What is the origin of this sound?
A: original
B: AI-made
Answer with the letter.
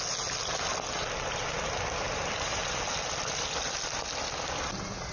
A